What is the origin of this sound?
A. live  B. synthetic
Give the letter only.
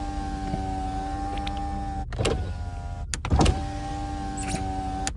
A